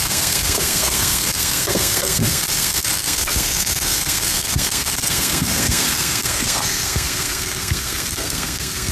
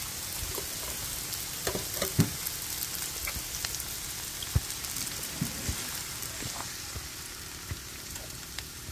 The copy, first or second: first